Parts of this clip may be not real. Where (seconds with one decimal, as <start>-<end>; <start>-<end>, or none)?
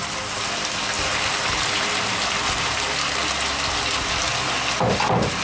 none